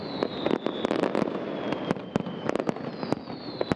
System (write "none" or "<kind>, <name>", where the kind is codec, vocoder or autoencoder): none